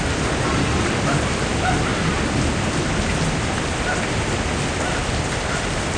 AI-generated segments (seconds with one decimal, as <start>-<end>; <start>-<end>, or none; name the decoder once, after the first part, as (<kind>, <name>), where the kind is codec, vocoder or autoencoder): none